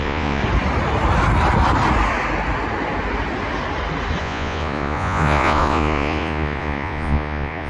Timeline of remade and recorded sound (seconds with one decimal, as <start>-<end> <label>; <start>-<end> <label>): 0.0-0.4 remade; 0.4-4.2 recorded; 4.2-7.7 remade